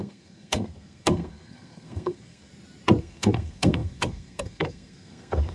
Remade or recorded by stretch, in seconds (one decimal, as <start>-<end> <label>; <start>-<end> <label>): 0.0-2.5 remade; 2.5-3.0 recorded; 3.0-5.5 remade